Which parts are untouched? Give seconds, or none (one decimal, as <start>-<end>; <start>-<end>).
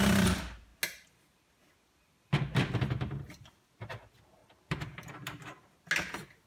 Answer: 0.0-4.4; 5.1-6.5